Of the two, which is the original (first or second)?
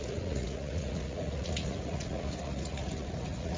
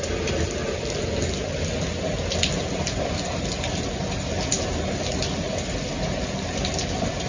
second